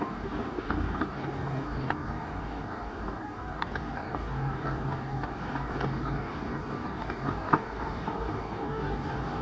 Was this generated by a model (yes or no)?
yes